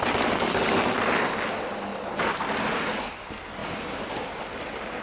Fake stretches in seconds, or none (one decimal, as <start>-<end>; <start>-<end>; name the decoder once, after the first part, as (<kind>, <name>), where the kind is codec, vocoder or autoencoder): none